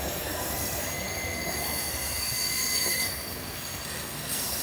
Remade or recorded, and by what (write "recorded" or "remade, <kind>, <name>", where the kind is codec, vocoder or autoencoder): remade, codec, SNAC